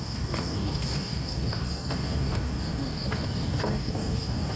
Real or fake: fake